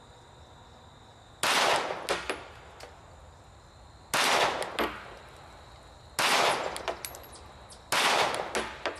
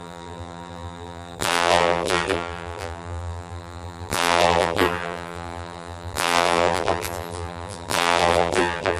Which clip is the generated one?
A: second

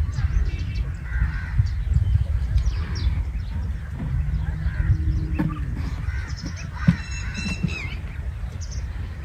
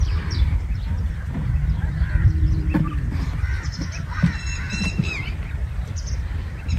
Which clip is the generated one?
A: second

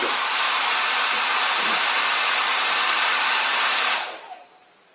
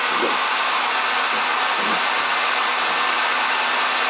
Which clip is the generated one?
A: first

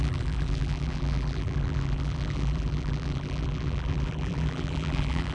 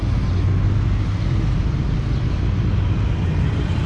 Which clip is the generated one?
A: first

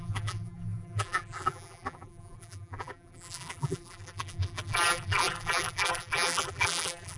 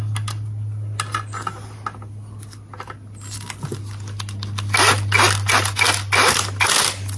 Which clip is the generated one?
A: first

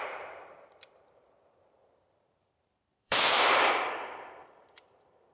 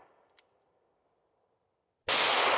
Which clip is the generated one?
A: first